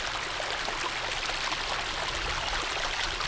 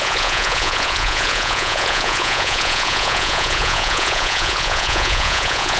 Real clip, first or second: first